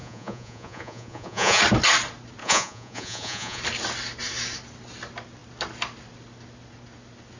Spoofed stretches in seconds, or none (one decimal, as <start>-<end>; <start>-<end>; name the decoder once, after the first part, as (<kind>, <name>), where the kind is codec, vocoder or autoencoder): 0.0-1.6 (vocoder, Vocos); 2.4-3.6